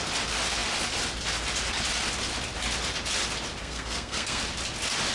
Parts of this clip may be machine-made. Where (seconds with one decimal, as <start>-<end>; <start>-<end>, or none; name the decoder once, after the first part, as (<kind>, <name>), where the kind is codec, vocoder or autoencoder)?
3.6-4.4 (codec, SNAC)